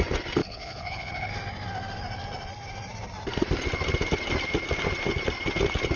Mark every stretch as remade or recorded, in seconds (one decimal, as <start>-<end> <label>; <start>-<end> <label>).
0.0-0.4 recorded; 0.4-1.3 remade; 1.3-6.0 recorded